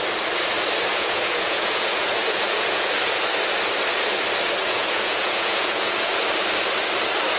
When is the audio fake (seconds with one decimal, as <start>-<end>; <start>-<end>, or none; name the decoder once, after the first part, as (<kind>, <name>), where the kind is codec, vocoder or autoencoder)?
0.9-2.9 (vocoder, Vocos); 4.6-6.1